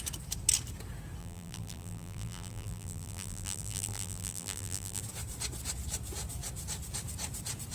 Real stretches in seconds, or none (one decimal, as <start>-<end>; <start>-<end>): 0.0-1.2; 5.0-7.7